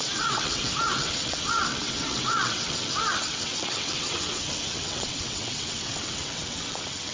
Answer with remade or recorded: remade